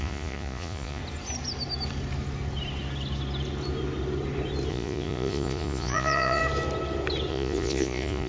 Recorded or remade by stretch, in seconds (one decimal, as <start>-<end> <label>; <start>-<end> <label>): 0.0-1.0 remade; 1.0-4.7 recorded; 4.7-6.4 remade; 6.4-7.3 recorded; 7.3-8.3 remade